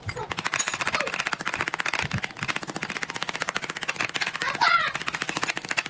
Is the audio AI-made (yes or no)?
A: no